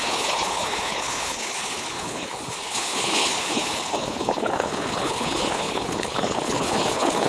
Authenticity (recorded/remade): remade